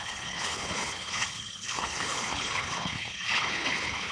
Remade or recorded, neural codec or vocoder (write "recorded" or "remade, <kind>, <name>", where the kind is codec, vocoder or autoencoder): remade, codec, HILCodec